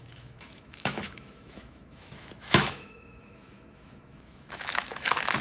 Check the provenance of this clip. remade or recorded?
remade